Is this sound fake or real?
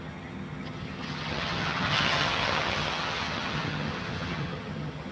fake